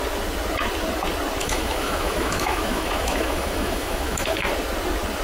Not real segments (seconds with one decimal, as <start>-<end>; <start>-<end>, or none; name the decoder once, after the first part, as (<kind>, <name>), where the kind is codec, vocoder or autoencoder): 1.4-4.5 (autoencoder, DAC-VAE)